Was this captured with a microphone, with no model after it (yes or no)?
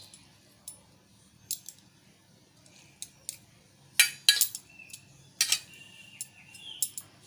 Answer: yes